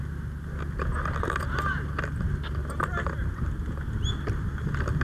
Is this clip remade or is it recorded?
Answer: recorded